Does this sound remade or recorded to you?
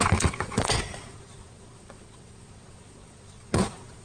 remade